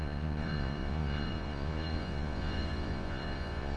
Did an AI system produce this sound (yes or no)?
yes